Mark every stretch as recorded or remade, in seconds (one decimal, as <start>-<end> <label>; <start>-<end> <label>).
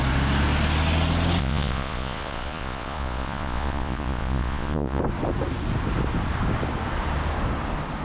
0.0-1.4 recorded; 1.4-5.0 remade; 5.0-8.0 recorded